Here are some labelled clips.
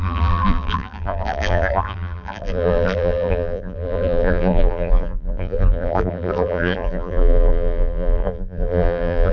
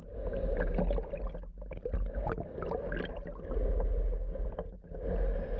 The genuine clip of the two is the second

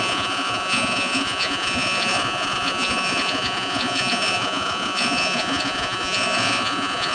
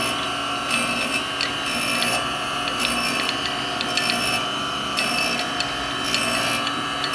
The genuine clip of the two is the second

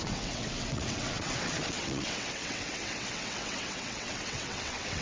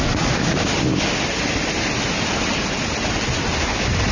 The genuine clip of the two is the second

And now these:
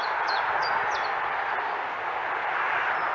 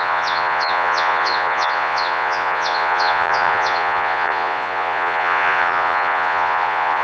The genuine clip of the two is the first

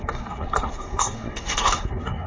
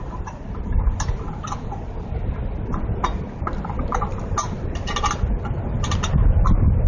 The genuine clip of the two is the second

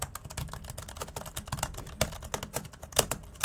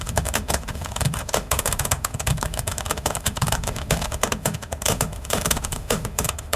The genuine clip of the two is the first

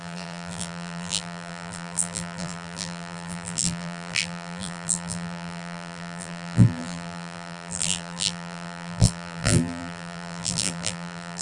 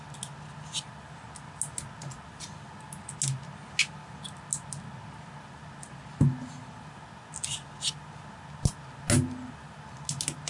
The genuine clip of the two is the second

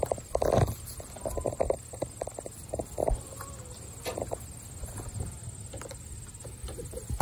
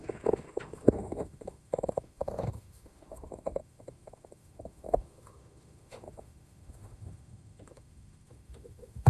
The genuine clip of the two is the first